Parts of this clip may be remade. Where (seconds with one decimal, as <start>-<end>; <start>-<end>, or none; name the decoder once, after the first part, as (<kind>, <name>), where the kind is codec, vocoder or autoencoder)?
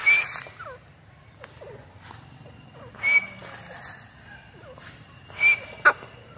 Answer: 0.0-0.5 (vocoder, BigVGAN v2)